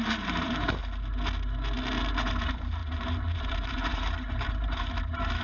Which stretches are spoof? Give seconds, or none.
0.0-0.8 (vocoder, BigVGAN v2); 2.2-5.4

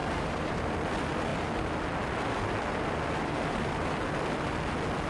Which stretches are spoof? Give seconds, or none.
0.0-0.5 (vocoder, BigVGAN v2)

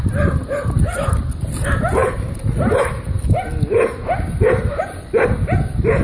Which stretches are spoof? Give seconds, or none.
2.0-3.2 (vocoder, BigVGAN v2); 4.0-4.8

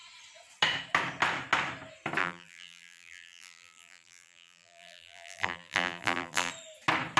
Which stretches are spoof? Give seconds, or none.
2.2-6.5 (vocoder, BigVGAN v2)

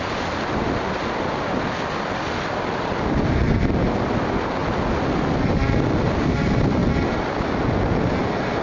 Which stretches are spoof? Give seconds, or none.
none